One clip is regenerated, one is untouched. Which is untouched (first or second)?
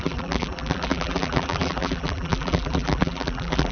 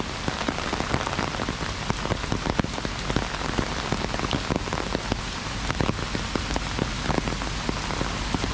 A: second